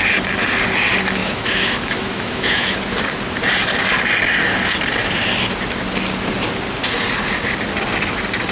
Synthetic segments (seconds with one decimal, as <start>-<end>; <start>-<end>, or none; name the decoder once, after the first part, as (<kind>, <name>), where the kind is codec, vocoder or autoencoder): 1.2-2.8 (autoencoder, DAC-VAE)